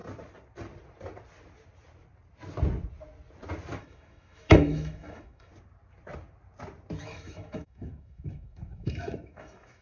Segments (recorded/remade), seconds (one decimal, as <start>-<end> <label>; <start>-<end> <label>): 0.0-3.8 recorded; 3.8-5.5 remade; 5.5-7.0 recorded; 7.0-9.8 remade